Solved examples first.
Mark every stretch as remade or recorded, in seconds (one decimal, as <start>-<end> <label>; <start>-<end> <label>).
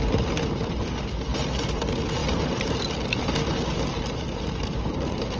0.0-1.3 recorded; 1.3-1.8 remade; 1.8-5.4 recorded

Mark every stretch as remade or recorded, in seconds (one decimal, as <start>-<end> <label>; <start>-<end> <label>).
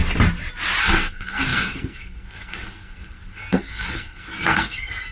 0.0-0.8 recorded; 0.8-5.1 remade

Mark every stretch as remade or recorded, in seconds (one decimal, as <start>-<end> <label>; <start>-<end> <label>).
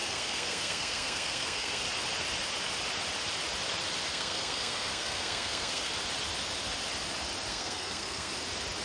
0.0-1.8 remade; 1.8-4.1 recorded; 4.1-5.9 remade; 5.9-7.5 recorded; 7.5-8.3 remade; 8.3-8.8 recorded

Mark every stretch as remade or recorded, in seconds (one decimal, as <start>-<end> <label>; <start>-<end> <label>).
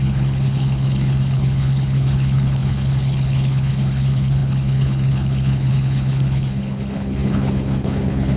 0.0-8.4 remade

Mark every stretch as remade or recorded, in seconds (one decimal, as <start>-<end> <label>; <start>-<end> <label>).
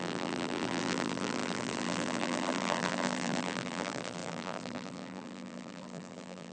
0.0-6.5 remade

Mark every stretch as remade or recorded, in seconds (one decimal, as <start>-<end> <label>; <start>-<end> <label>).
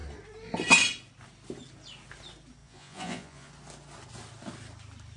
0.0-2.6 recorded; 2.6-3.5 remade; 3.5-5.2 recorded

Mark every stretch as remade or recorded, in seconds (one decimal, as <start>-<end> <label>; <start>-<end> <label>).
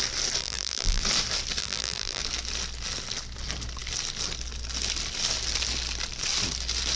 0.0-0.4 recorded; 0.4-1.0 remade; 1.0-1.6 recorded; 1.6-2.2 remade; 2.2-7.0 recorded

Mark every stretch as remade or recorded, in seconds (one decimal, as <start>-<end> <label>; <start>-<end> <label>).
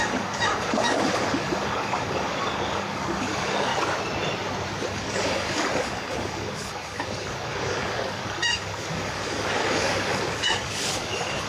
0.0-3.7 remade; 3.7-4.9 recorded; 4.9-11.5 remade